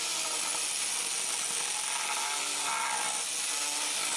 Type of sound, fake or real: real